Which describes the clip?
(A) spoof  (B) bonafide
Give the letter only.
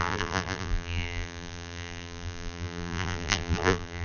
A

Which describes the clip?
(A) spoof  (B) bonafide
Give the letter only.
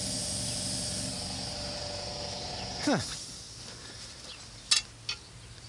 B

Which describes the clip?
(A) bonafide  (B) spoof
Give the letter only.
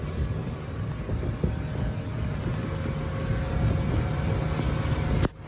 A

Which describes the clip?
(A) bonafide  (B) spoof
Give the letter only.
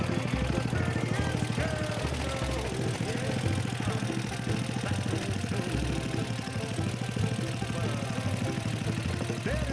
A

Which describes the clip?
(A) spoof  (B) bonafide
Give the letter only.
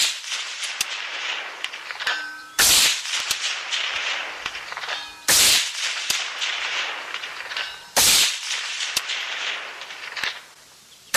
A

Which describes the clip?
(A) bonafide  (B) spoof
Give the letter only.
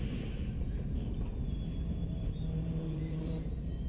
B